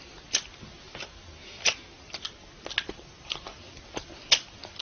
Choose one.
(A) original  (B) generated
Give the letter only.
A